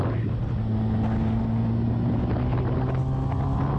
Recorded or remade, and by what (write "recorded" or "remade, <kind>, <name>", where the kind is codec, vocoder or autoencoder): recorded